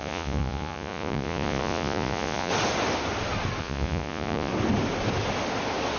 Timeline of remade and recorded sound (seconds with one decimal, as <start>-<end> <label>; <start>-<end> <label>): 0.0-2.5 remade; 2.5-3.6 recorded; 3.6-4.5 remade; 4.5-6.0 recorded